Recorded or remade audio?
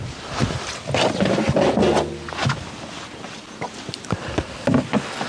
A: recorded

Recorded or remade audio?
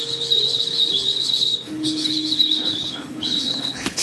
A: remade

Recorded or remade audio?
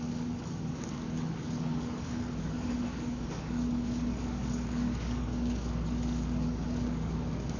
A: remade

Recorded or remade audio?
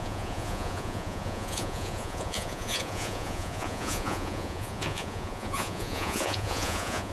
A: remade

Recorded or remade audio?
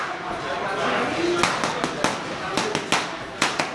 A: recorded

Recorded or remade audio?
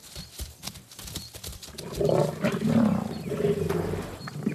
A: remade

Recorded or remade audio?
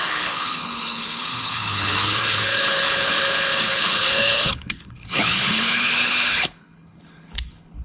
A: remade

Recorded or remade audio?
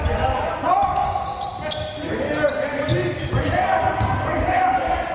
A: recorded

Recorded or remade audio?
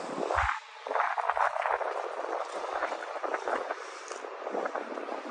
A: recorded